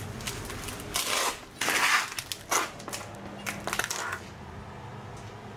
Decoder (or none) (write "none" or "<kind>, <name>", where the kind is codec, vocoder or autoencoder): none